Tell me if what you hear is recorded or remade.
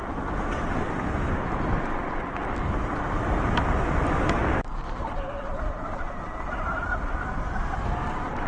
recorded